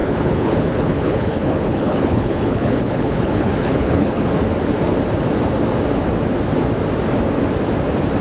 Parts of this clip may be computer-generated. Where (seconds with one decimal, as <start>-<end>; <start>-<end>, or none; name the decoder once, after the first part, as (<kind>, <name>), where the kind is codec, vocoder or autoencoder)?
0.0-4.3 (codec, HILCodec)